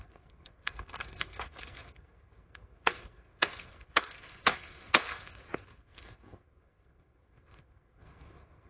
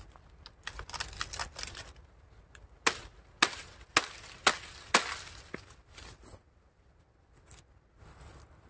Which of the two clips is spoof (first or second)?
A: first